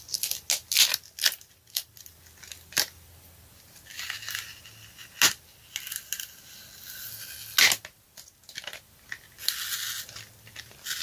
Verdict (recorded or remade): recorded